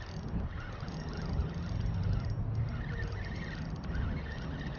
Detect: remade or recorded recorded